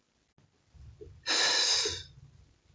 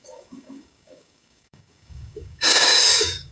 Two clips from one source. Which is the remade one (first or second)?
second